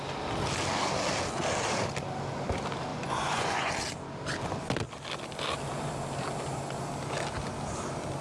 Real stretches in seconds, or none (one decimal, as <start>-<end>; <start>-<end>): 0.0-2.9; 3.7-8.2